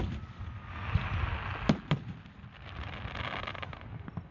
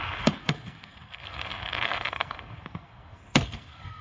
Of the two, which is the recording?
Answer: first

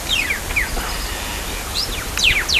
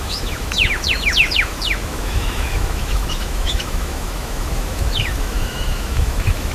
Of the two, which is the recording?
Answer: first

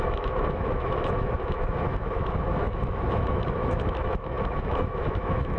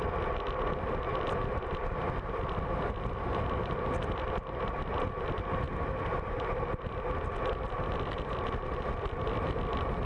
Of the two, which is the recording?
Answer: second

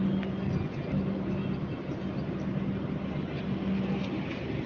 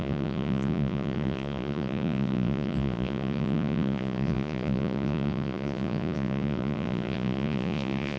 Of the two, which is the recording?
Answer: first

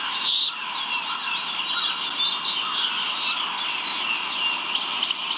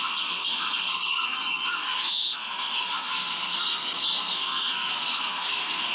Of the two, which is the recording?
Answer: first